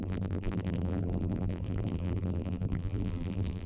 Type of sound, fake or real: fake